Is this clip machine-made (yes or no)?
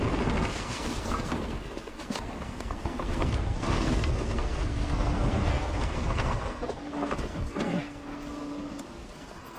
yes